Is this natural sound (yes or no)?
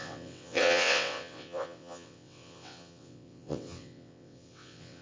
no